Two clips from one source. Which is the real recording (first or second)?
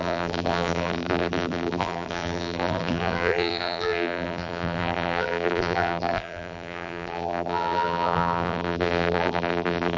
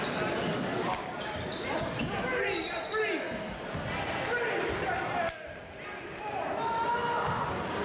second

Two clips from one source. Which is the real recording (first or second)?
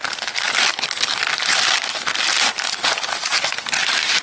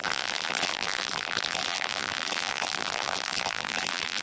first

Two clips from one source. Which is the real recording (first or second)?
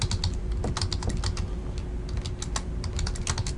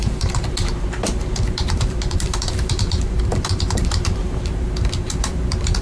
first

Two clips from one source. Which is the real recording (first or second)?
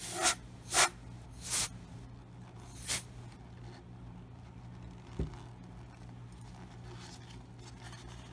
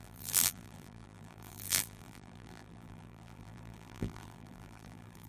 first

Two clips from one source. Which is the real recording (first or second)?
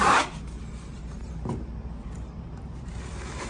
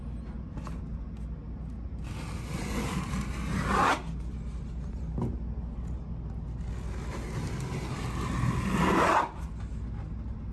second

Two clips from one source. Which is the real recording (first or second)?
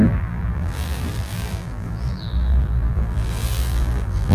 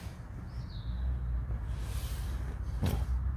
second